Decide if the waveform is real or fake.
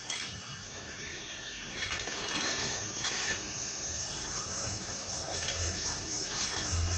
fake